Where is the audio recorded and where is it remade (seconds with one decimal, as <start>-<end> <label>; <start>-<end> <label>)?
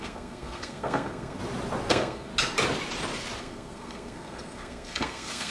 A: 0.0-1.4 remade; 1.4-1.9 recorded; 1.9-2.3 remade; 2.3-3.4 recorded; 3.4-5.5 remade